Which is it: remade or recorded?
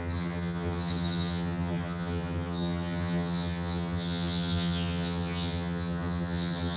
remade